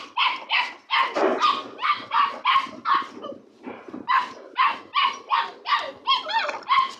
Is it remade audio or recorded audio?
remade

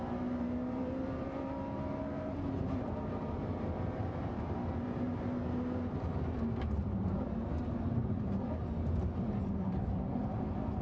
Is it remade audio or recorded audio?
remade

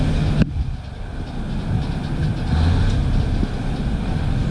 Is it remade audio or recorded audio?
recorded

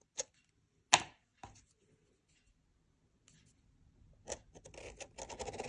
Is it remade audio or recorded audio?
recorded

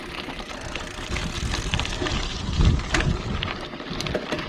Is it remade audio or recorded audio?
remade